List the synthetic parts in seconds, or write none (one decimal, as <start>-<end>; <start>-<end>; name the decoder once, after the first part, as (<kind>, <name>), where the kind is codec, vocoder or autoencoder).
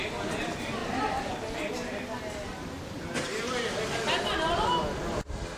none